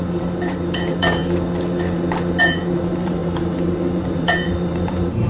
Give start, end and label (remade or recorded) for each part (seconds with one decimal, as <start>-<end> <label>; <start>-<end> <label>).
0.0-1.2 remade; 1.2-2.4 recorded; 2.4-5.3 remade